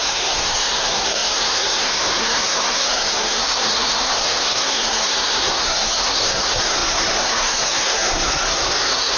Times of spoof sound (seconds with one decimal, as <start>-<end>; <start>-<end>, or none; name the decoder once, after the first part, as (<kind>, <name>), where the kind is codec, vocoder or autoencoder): 0.0-9.2 (codec, SNAC)